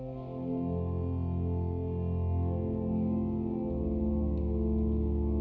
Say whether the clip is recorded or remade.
recorded